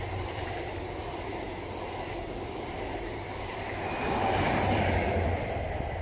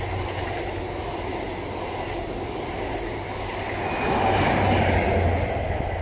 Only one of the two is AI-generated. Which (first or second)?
first